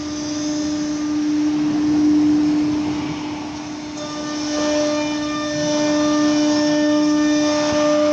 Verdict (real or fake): real